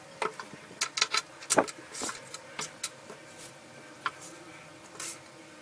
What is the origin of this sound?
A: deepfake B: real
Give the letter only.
B